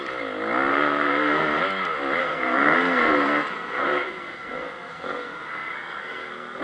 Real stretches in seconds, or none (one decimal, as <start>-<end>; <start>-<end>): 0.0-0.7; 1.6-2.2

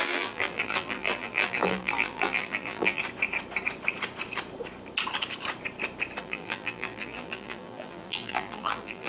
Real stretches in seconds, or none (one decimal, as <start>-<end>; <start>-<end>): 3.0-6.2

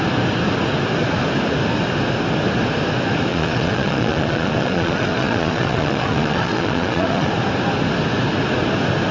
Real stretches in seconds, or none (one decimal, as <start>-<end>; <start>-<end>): 0.0-3.3; 7.3-9.1